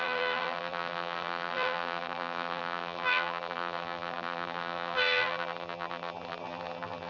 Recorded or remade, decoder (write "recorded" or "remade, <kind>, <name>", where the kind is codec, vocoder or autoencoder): remade, vocoder, BigVGAN v2